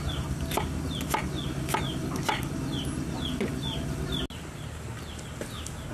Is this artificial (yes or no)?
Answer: no